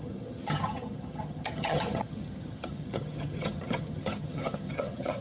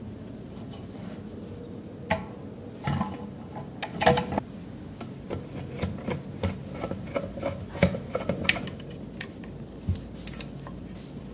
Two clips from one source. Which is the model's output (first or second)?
first